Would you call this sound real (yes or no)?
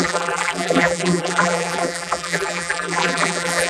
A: no